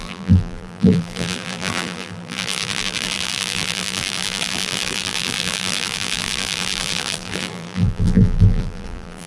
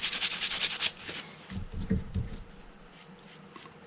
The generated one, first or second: first